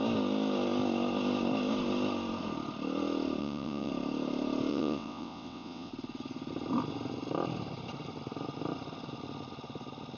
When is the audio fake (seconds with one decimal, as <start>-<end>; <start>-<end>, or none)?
3.4-3.9; 4.7-5.9